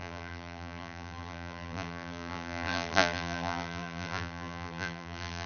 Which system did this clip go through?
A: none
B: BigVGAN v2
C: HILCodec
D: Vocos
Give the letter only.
B